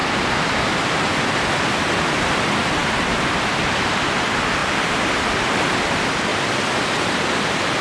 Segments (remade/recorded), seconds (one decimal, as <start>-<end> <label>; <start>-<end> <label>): 0.0-4.6 recorded; 4.6-5.3 remade; 5.3-6.3 recorded; 6.3-7.0 remade; 7.0-7.8 recorded